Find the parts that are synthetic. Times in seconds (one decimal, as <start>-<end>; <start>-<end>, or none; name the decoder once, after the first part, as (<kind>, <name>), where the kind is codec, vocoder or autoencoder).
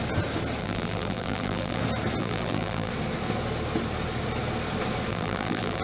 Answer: 0.6-1.8 (vocoder, BigVGAN v2); 2.2-2.9; 5.1-5.8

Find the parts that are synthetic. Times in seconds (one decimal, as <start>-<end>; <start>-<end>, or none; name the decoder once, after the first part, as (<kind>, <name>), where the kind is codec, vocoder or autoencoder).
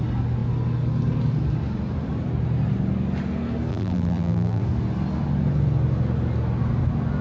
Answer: 3.7-4.6 (vocoder, BigVGAN v2)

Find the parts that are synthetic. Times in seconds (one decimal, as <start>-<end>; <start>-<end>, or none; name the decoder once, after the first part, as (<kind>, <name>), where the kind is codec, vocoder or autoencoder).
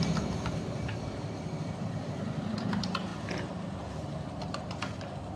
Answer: 0.0-5.4 (vocoder, BigVGAN v2)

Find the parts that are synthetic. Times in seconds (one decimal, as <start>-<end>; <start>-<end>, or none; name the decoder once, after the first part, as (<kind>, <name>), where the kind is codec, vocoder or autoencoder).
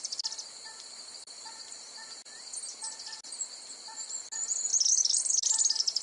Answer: none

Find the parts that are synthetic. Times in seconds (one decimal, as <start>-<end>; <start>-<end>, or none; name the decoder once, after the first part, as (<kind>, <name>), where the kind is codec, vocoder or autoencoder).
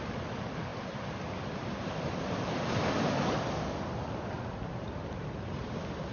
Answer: 0.7-4.4 (vocoder, BigVGAN v2); 5.2-6.1